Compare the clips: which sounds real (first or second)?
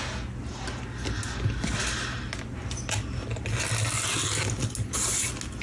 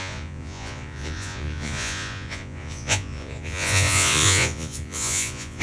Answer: first